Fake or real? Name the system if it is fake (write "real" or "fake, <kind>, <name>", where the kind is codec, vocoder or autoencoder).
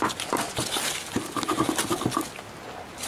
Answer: real